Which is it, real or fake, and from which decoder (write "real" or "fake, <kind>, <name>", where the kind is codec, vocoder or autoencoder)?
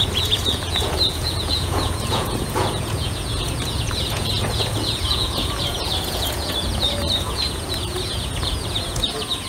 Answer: fake, vocoder, Vocos